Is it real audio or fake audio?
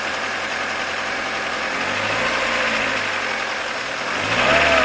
real